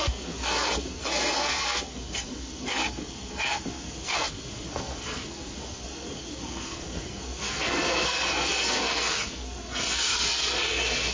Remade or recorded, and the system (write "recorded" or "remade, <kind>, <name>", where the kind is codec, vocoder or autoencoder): remade, codec, SNAC